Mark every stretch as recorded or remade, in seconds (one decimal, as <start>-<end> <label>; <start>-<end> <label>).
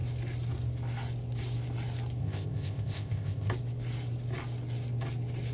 0.0-2.2 recorded; 2.2-3.5 remade; 3.5-5.5 recorded